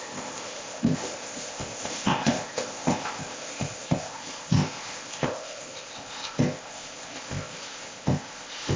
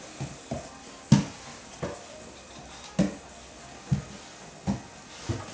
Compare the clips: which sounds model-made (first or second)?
first